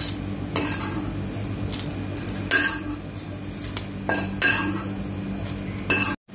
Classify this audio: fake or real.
real